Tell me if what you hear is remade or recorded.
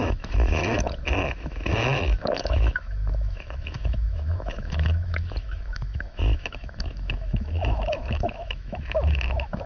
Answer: remade